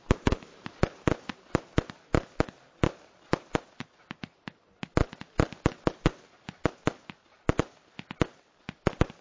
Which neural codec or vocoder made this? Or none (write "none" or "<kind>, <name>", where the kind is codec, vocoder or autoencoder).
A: none